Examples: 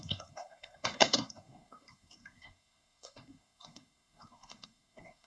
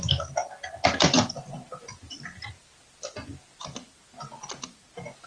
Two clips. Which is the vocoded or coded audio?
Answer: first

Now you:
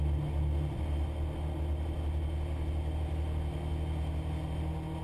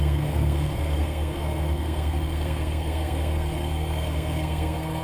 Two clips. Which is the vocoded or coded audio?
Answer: second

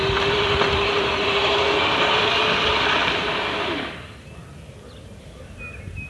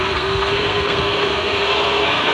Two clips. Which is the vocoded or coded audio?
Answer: second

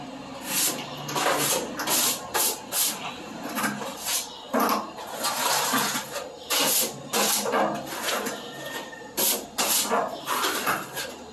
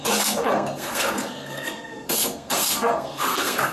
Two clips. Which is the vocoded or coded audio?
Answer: second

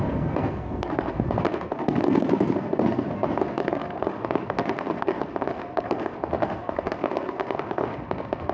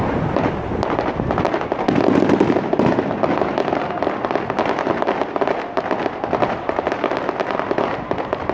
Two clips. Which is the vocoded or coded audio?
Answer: first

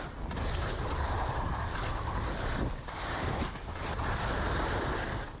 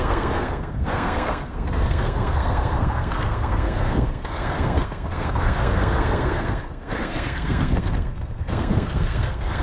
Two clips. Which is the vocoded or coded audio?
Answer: second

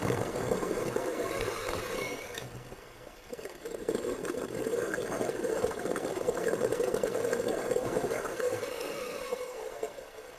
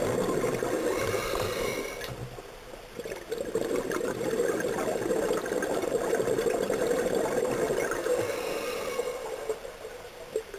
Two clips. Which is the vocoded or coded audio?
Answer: first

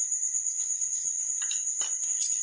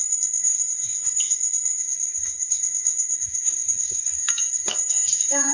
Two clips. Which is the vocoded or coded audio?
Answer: second